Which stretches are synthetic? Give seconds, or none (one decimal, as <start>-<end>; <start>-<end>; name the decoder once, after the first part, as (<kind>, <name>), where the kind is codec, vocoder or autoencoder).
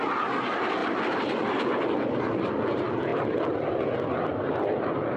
none